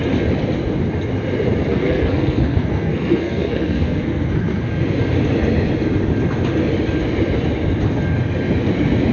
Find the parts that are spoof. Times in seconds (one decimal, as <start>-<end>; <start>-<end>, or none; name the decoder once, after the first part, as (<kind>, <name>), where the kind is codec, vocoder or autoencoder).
1.7-4.7 (codec, SNAC)